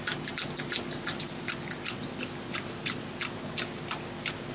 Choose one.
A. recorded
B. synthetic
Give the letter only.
A